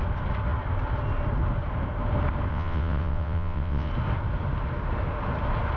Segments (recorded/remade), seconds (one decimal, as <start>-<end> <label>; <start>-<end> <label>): 0.0-2.5 recorded; 2.5-3.9 remade; 3.9-5.8 recorded